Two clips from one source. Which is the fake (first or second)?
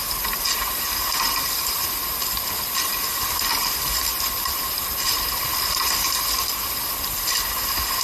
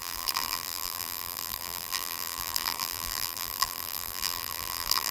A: second